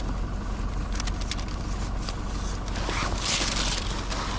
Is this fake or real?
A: real